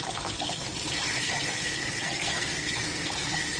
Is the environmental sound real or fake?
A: fake